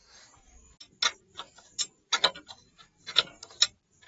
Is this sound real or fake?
real